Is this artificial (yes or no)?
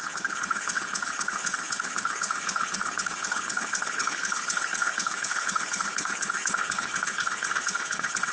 yes